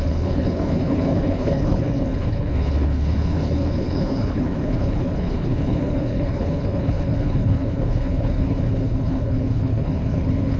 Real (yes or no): no